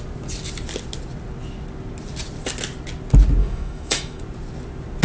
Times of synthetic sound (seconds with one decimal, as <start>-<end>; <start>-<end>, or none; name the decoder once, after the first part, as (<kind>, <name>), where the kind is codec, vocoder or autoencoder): 3.4-4.2 (autoencoder, DAC-VAE)